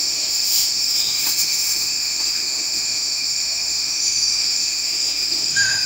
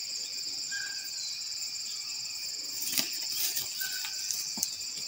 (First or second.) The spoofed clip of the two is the first